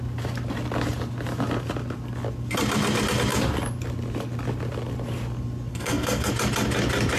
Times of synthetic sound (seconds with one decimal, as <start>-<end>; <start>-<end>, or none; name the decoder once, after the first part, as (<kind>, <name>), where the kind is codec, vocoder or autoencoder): 5.7-6.3 (codec, SNAC)